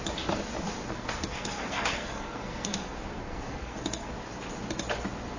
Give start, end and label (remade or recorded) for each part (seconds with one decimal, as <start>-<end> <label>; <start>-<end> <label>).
0.0-0.9 recorded; 0.9-4.1 remade; 4.1-5.4 recorded